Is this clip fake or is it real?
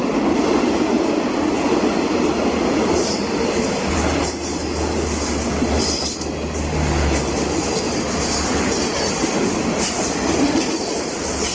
real